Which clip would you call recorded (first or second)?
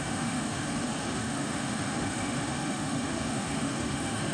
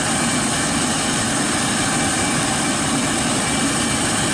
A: second